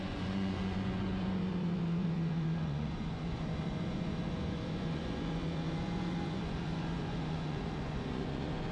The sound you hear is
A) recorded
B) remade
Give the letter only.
B